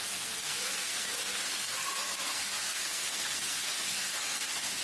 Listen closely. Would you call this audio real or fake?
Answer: fake